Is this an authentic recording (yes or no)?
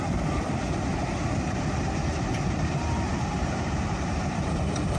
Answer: no